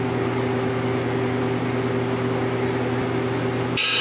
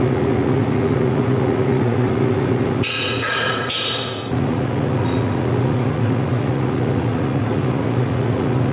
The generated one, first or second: second